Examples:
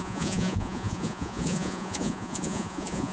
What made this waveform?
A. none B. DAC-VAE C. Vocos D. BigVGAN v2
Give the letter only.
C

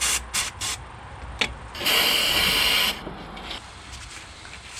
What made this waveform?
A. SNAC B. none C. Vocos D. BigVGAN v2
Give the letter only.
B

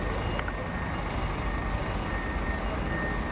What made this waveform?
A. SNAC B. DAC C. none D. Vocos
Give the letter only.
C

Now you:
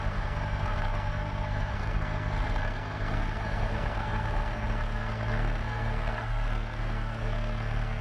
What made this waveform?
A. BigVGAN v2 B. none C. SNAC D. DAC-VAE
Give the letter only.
C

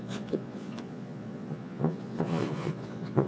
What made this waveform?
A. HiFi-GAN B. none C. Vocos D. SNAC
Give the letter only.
C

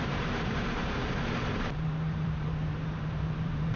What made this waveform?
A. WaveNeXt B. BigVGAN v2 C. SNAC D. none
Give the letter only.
B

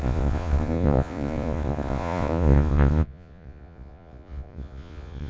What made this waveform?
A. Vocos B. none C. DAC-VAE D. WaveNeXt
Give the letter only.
A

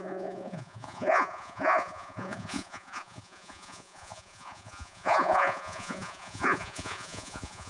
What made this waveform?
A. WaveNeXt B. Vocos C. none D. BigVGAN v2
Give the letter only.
B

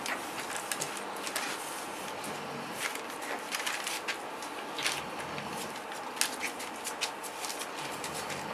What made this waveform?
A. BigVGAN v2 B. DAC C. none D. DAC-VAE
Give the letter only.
C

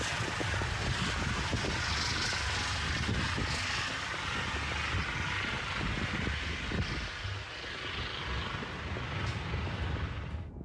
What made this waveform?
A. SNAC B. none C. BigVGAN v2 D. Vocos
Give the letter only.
B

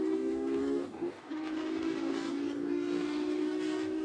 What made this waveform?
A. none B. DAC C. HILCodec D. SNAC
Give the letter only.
B